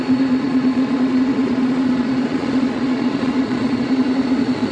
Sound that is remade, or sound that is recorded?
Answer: remade